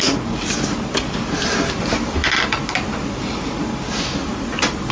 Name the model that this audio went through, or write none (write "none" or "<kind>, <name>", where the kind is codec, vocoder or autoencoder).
none